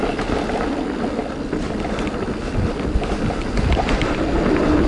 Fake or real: real